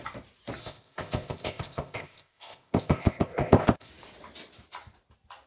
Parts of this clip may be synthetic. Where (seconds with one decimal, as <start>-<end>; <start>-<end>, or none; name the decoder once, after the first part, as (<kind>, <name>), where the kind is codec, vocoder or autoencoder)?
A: 0.6-3.9 (codec, ZipCodec)